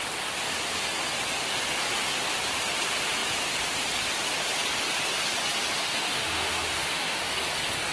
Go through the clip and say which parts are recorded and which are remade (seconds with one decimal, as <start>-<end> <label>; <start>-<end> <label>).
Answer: 0.0-5.9 recorded; 5.9-7.3 remade; 7.3-7.9 recorded